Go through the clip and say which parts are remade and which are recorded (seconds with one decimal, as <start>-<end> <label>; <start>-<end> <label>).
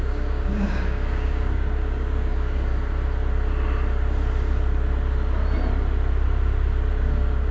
0.0-2.7 remade; 2.7-6.9 recorded; 6.9-7.5 remade